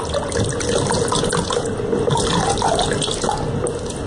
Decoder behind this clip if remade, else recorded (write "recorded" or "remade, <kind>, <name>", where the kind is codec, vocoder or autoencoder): recorded